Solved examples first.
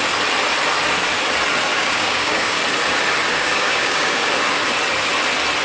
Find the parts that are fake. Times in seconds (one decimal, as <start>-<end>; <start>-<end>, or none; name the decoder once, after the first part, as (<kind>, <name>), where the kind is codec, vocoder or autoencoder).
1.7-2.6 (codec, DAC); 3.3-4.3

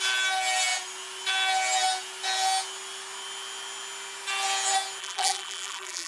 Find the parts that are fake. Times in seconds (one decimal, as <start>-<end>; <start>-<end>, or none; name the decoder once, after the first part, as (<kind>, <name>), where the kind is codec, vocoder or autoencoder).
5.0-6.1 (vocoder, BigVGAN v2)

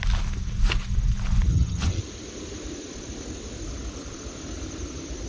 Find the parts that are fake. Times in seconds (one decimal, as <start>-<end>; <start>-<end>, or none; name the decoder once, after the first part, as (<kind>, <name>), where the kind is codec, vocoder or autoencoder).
1.5-2.0 (vocoder, HiFi-GAN)

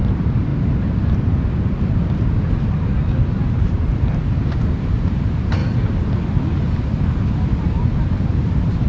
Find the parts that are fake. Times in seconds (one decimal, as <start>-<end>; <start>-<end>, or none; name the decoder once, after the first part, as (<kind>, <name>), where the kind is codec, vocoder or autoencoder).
0.0-0.5 (vocoder, BigVGAN v2); 2.2-5.6; 8.1-8.9

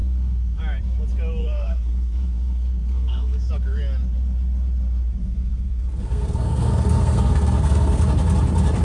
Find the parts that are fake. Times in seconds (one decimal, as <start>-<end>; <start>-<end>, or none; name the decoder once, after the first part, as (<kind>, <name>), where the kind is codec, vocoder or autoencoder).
0.0-0.6 (codec, SNAC); 1.4-3.5; 5.2-8.0

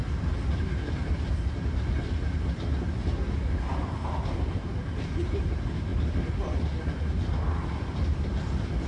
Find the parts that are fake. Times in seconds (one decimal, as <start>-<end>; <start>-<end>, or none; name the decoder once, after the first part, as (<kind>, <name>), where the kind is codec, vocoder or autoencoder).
none

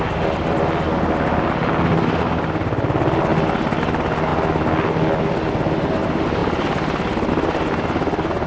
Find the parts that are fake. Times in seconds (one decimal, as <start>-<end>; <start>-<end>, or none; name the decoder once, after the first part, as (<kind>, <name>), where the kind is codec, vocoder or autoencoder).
none